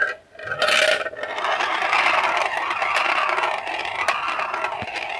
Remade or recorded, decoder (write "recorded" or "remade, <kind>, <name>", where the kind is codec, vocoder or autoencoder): recorded